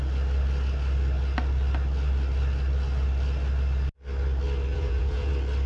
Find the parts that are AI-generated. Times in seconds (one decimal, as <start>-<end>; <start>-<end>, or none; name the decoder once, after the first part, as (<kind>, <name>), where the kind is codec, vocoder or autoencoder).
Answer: 4.7-5.3 (vocoder, Vocos)